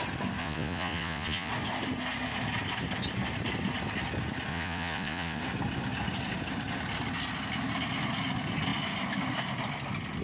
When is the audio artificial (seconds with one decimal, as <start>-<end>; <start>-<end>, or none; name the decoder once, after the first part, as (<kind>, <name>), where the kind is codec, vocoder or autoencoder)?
0.4-1.5 (vocoder, Vocos); 4.5-5.4